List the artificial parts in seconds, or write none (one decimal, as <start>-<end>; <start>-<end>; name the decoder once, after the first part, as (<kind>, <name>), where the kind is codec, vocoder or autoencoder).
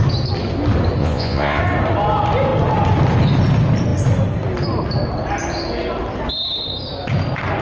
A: 1.0-1.6 (vocoder, Vocos)